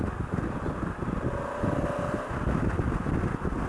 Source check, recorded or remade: recorded